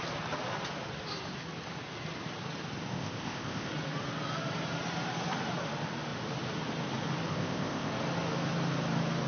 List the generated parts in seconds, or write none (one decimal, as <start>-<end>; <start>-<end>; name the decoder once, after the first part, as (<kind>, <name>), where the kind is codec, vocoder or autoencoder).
2.9-3.7 (codec, ZipCodec); 7.3-7.9